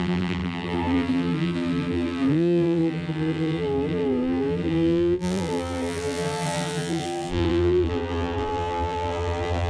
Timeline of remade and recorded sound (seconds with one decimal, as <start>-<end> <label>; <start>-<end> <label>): 0.0-9.7 remade